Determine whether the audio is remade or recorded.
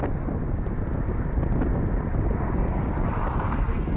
recorded